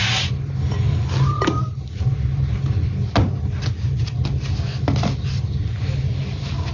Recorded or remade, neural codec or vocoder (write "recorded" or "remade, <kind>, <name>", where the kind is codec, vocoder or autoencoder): recorded